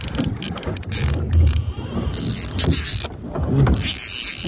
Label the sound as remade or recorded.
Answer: recorded